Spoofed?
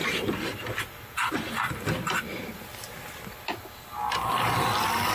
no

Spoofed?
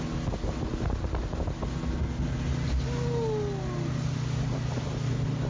no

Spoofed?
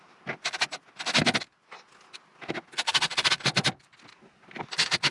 no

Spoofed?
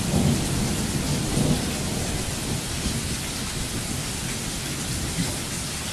no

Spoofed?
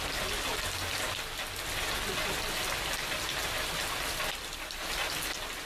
no